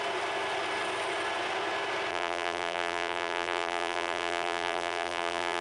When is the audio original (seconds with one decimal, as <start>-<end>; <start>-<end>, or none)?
0.0-2.1